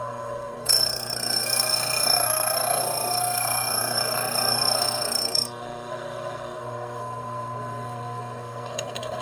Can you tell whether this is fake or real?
fake